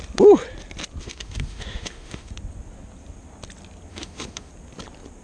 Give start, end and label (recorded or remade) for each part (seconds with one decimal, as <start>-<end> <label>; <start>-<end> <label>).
0.0-1.0 recorded; 1.0-2.3 remade; 2.3-3.9 recorded; 3.9-4.5 remade; 4.5-5.2 recorded